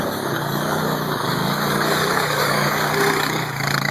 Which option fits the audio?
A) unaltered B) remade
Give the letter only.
B